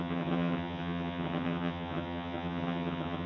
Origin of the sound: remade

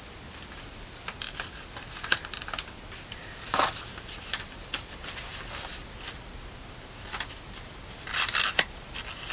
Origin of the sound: recorded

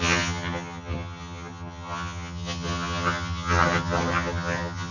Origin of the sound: remade